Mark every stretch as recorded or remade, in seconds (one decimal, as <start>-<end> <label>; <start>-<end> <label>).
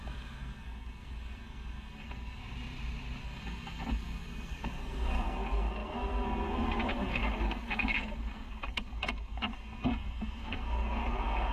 0.0-2.4 remade; 2.4-3.2 recorded; 3.2-11.5 remade